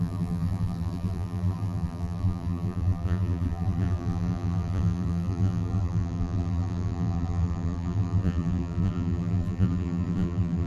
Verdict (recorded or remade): remade